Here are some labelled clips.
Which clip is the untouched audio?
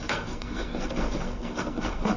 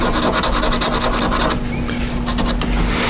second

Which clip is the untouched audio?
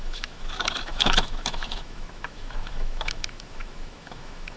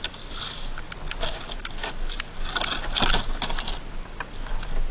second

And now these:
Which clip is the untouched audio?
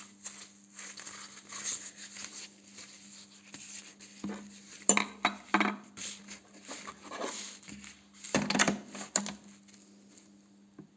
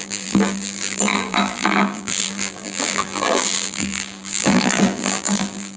first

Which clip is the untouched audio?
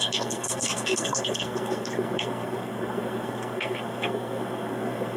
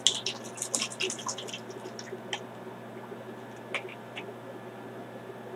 second